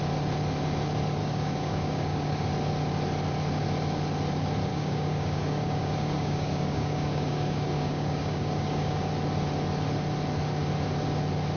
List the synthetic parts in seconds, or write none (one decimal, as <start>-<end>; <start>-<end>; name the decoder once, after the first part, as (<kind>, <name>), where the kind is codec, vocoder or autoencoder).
1.2-2.5 (codec, DAC); 4.7-9.1